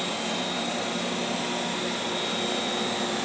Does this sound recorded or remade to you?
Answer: recorded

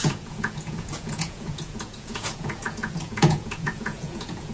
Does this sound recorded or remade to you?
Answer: remade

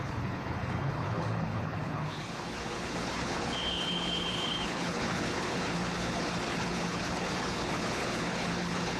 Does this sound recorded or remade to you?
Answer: remade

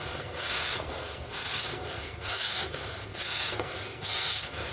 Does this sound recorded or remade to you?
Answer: remade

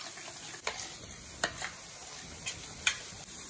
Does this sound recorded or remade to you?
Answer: recorded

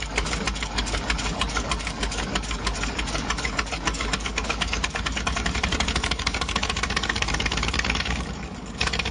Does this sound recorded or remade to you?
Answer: remade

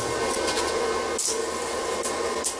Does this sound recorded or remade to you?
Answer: recorded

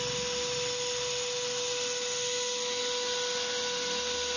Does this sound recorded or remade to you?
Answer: recorded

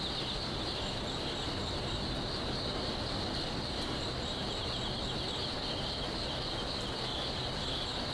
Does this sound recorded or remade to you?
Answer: recorded